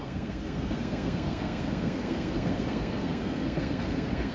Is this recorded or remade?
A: remade